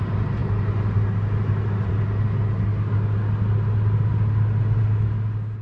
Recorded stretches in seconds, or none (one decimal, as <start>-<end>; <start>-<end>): 0.0-5.6